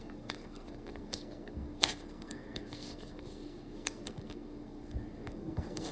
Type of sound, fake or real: fake